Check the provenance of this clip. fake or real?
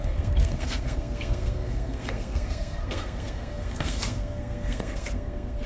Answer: fake